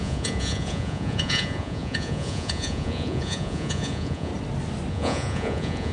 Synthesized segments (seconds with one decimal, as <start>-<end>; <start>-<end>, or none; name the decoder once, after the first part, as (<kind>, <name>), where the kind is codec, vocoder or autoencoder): 0.0-4.3 (vocoder, Vocos); 4.9-5.9